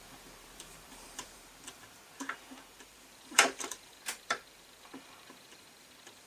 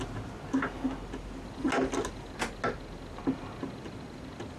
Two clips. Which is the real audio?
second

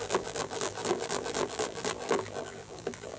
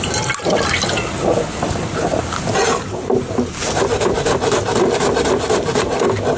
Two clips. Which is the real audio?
second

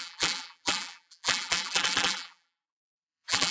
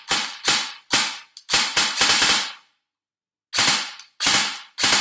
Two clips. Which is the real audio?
second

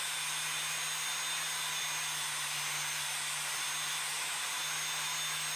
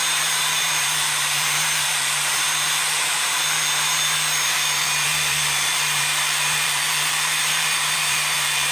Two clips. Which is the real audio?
first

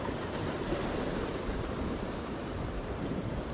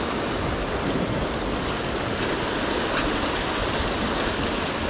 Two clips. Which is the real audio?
second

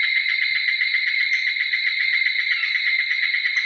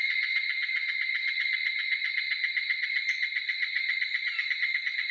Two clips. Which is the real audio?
second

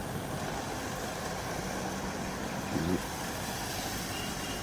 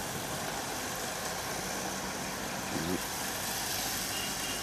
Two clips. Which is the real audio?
second